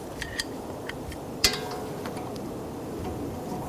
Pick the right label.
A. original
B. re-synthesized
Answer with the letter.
B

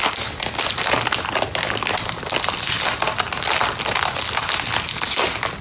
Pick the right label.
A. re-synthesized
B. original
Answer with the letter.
B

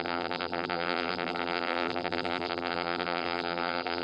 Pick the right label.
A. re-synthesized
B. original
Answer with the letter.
A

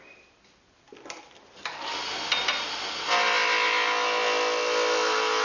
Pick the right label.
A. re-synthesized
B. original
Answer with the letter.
B